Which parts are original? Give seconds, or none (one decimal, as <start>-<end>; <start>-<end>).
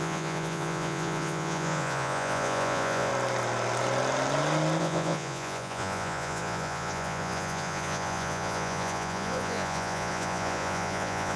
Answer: 3.1-4.8